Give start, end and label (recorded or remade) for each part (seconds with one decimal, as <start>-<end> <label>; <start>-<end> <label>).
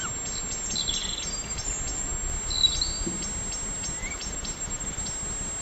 0.0-1.0 recorded; 1.0-1.7 remade; 1.7-4.0 recorded; 4.0-5.0 remade; 5.0-5.6 recorded